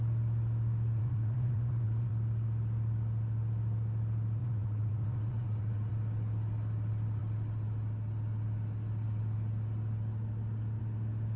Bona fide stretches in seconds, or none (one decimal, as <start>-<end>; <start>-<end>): 0.0-1.0; 2.1-4.4; 5.9-11.4